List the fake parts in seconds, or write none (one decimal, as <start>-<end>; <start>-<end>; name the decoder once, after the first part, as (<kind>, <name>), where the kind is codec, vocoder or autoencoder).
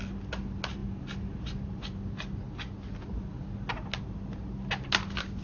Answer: none